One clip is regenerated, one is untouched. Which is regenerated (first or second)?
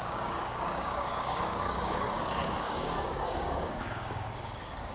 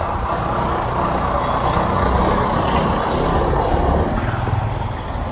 first